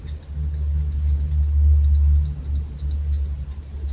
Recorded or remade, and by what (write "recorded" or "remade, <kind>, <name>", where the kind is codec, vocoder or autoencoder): recorded